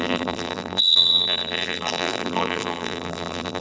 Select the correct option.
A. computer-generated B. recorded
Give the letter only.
A